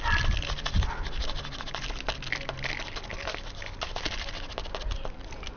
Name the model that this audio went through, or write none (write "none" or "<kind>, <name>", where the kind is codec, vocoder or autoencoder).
none